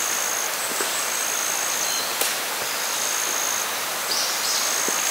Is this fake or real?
real